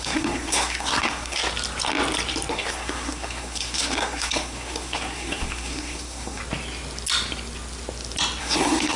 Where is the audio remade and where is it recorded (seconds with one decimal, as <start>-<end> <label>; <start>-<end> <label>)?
0.0-1.4 remade; 1.4-2.5 recorded; 2.5-6.4 remade; 6.4-8.4 recorded; 8.4-9.0 remade